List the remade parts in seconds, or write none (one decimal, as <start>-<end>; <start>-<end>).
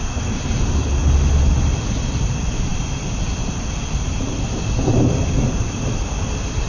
none